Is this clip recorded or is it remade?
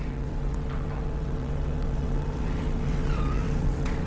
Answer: remade